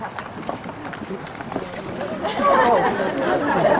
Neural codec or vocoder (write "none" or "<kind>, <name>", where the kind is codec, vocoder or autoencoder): none